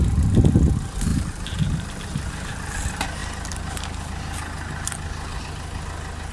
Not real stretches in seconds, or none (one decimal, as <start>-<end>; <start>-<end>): 1.1-2.7